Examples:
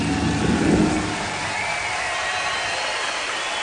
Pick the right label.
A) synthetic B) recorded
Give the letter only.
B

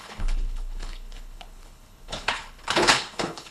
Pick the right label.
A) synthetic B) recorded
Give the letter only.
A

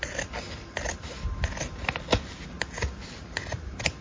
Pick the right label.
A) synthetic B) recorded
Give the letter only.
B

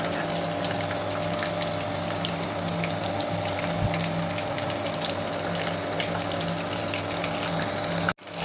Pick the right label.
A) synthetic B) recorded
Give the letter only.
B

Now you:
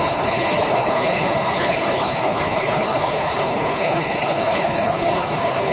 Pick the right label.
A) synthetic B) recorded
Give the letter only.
A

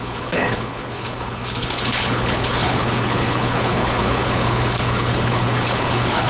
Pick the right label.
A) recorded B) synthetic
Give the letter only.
B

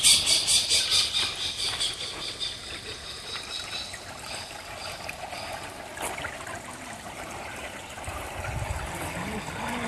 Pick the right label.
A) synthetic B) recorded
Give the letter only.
B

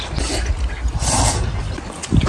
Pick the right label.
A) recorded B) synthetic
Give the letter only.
A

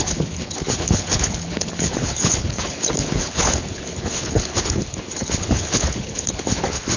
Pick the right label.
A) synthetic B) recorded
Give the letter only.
A